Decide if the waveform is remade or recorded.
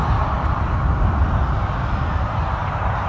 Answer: recorded